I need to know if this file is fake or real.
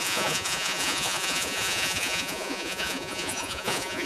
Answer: fake